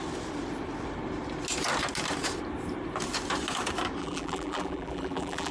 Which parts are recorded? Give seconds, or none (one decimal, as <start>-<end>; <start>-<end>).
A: 0.0-4.0